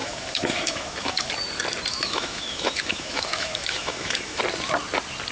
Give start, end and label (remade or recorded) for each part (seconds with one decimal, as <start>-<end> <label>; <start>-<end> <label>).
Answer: 0.0-1.3 remade; 1.3-1.9 recorded; 1.9-4.4 remade; 4.4-5.3 recorded